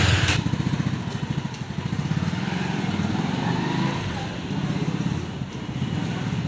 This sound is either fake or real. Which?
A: real